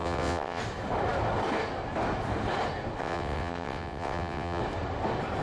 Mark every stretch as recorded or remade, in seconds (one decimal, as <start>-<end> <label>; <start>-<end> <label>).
0.0-0.6 remade; 0.6-3.0 recorded; 3.0-4.6 remade; 4.6-5.4 recorded